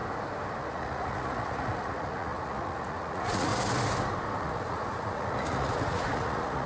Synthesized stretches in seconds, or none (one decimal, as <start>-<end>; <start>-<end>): 0.6-3.5; 4.4-6.7